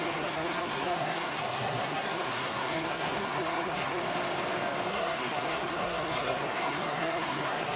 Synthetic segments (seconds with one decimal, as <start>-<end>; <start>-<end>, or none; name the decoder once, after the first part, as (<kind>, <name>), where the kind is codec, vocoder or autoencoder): 0.0-4.0 (codec, SNAC); 4.9-7.8